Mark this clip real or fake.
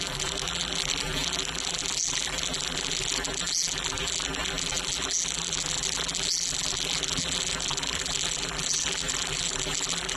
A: fake